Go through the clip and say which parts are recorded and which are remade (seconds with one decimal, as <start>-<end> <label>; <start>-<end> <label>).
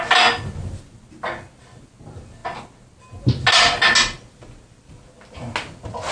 0.0-6.1 recorded